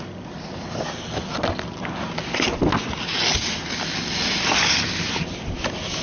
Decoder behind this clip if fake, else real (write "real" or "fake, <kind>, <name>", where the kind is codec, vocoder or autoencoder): real